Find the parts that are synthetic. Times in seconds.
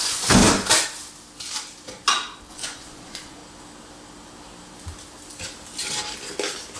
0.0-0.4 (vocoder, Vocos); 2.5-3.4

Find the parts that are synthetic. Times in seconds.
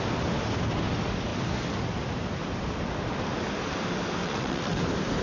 4.2-4.8 (vocoder, WaveNeXt)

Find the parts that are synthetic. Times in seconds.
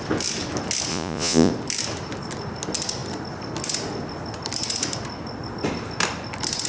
0.9-1.5 (vocoder, Vocos)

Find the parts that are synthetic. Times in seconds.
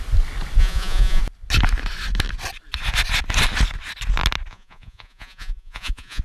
0.6-1.2 (vocoder, Vocos); 4.5-6.2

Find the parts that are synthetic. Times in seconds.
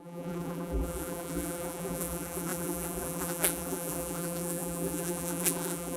0.0-6.0 (vocoder, BigVGAN v2)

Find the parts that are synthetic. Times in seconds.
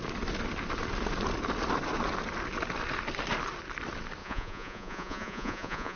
4.2-6.0 (vocoder, Vocos)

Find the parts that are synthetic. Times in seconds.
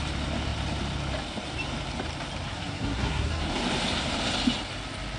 2.5-3.4 (codec, SNAC)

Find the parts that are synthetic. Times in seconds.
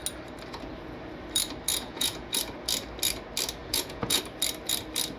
1.7-2.4 (vocoder, Vocos); 3.6-4.2